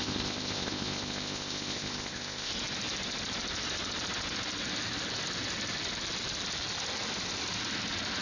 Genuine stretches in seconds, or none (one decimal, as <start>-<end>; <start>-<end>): 2.5-8.2